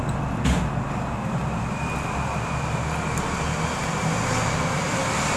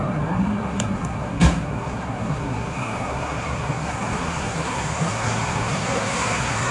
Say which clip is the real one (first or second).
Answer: first